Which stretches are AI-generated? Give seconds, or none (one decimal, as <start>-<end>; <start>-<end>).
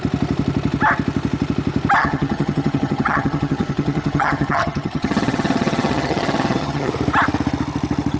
2.0-6.9